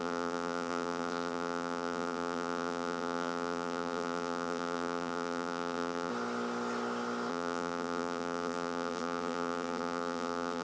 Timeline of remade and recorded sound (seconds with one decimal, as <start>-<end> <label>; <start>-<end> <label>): 0.0-6.1 remade; 6.1-7.3 recorded; 7.3-10.6 remade